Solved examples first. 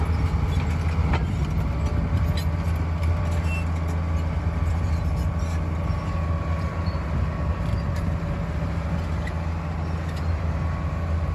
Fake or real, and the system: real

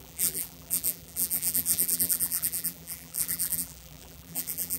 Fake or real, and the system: fake, vocoder, BigVGAN v2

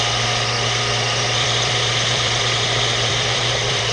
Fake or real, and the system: fake, vocoder, BigVGAN v2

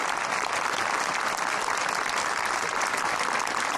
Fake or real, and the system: real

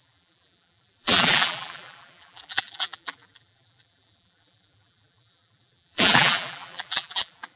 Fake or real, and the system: fake, vocoder, BigVGAN v2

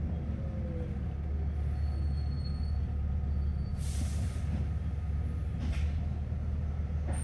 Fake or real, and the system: real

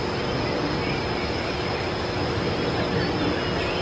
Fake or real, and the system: real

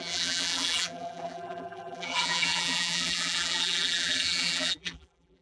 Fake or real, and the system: fake, vocoder, BigVGAN v2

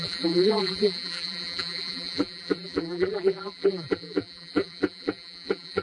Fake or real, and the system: fake, vocoder, BigVGAN v2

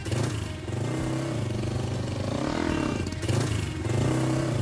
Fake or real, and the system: real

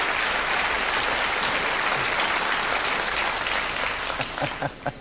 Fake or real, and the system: real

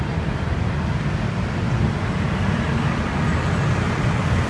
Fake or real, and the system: real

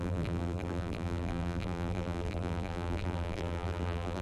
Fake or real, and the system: fake, vocoder, BigVGAN v2